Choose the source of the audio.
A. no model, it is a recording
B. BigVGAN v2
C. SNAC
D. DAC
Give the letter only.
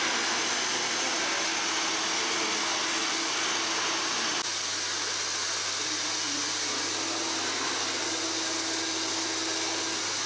A